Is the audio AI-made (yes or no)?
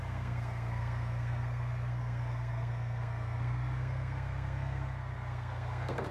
yes